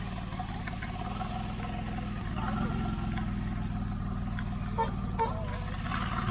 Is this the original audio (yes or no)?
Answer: yes